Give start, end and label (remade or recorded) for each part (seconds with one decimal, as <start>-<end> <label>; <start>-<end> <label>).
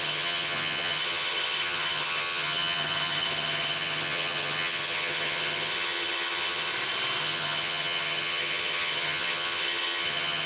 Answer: 0.0-6.7 remade; 6.7-7.2 recorded; 7.2-10.5 remade